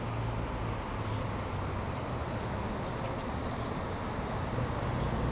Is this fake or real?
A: real